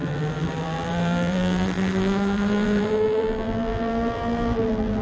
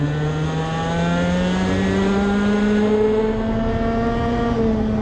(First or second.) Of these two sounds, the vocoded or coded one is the first